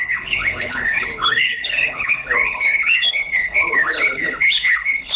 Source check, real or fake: fake